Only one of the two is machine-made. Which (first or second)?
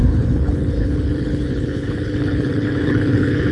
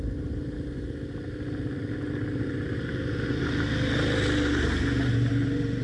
first